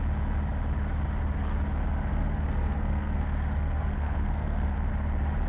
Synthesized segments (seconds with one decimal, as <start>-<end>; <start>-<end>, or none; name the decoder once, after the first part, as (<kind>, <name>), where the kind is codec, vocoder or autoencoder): 2.1-4.9 (codec, SNAC)